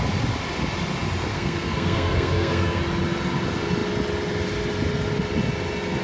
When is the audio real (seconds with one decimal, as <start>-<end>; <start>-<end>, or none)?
0.0-1.3; 2.8-6.0